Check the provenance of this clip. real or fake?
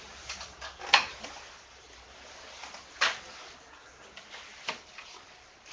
real